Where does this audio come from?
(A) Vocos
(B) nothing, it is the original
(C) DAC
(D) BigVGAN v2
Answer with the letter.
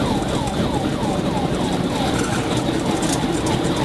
B